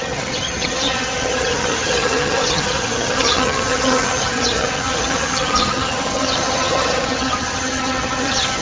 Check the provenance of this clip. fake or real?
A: fake